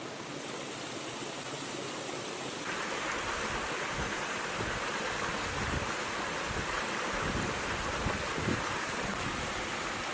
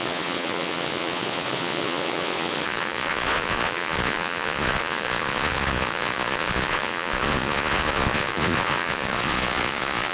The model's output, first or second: second